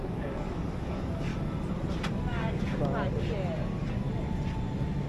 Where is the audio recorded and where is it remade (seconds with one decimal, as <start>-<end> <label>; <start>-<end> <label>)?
0.0-1.3 remade; 1.3-2.1 recorded; 2.1-2.8 remade; 2.8-5.1 recorded